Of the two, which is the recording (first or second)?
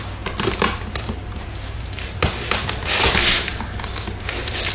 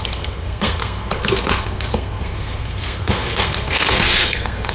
first